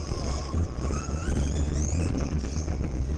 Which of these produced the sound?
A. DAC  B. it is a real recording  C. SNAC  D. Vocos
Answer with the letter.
D